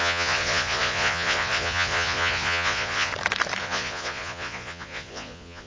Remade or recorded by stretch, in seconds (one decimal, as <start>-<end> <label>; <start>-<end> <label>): 0.0-3.1 remade; 3.1-3.6 recorded; 3.6-5.7 remade